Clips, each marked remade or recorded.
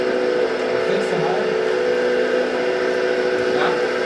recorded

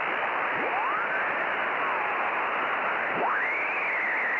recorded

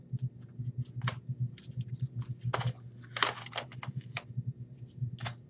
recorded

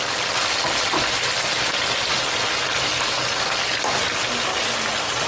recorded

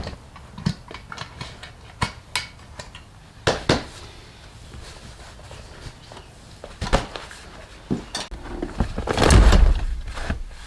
recorded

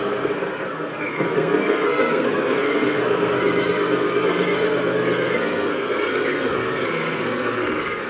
remade